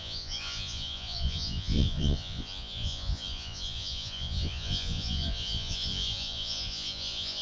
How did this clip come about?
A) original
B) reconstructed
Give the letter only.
B